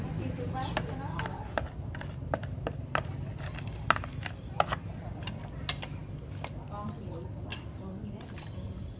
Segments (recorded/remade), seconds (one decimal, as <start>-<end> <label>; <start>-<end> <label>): 0.0-9.0 recorded